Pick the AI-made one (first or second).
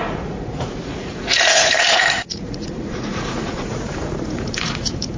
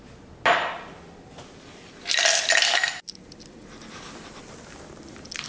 first